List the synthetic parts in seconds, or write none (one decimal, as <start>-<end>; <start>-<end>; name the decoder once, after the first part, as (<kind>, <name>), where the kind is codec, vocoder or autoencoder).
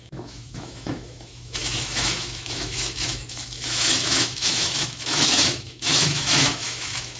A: 0.0-7.2 (autoencoder, DAC-VAE)